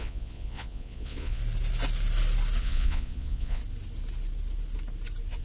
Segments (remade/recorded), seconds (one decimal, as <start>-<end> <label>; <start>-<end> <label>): 0.0-1.4 remade; 1.4-2.6 recorded; 2.6-3.6 remade; 3.6-5.4 recorded